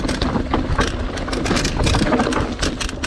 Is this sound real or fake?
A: real